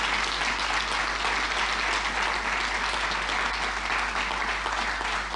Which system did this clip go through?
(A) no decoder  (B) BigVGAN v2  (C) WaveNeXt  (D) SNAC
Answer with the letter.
A